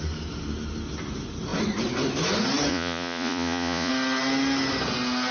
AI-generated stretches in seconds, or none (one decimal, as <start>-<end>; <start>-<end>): 2.7-3.9